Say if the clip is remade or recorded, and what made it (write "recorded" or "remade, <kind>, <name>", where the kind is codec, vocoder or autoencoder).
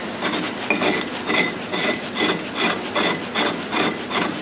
recorded